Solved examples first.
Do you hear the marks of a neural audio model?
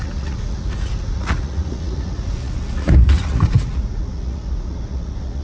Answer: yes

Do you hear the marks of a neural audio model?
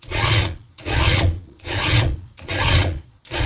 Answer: yes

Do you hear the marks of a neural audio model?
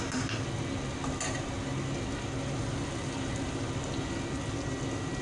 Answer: no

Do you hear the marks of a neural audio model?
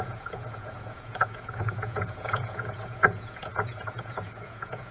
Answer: yes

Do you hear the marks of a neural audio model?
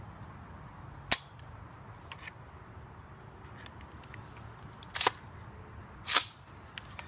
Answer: no